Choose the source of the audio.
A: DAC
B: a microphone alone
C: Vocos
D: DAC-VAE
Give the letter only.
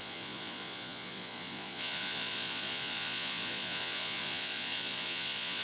C